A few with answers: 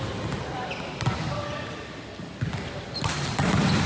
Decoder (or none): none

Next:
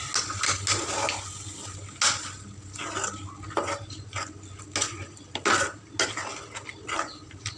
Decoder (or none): none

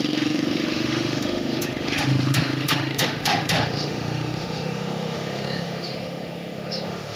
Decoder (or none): autoencoder, DAC-VAE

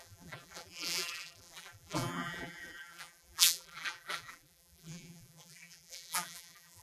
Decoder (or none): vocoder, BigVGAN v2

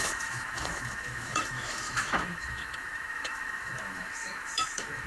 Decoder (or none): autoencoder, DAC-VAE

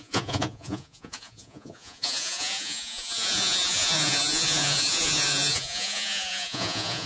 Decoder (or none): vocoder, Vocos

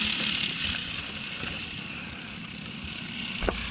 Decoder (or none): none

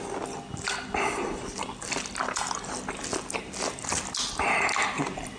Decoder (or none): none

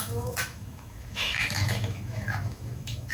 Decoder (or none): autoencoder, DAC-VAE